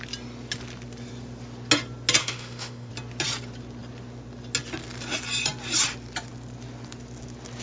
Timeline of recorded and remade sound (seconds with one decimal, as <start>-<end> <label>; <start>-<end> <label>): 0.0-2.2 recorded; 2.2-2.9 remade; 2.9-7.6 recorded